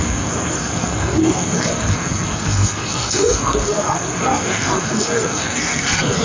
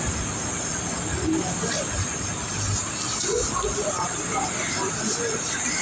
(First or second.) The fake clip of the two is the first